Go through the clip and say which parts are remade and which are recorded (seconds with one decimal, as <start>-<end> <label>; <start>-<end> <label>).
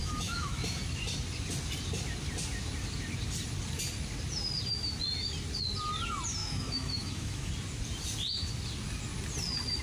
0.0-0.8 remade; 0.8-6.4 recorded; 6.4-7.5 remade; 7.5-9.8 recorded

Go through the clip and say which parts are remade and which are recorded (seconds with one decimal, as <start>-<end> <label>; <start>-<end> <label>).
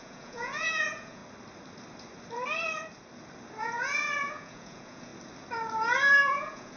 0.0-1.2 remade; 1.2-3.6 recorded; 3.6-5.1 remade; 5.1-6.1 recorded; 6.1-6.8 remade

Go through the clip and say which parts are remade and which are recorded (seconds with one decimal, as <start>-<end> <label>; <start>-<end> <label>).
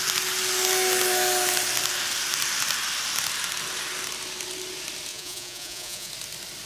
0.0-5.1 recorded; 5.1-6.1 remade; 6.1-6.7 recorded